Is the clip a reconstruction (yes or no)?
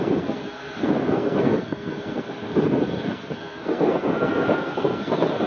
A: yes